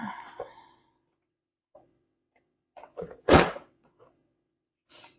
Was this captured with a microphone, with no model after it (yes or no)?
no